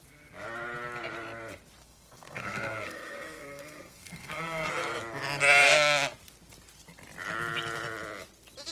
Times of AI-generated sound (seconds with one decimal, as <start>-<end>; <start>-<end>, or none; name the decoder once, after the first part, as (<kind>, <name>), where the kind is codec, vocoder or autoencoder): 1.8-4.7 (codec, SNAC)

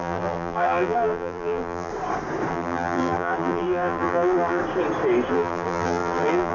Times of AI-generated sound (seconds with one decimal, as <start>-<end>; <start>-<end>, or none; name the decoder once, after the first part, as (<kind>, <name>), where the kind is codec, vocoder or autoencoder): 0.0-1.9 (vocoder, BigVGAN v2); 2.5-4.6; 5.3-6.5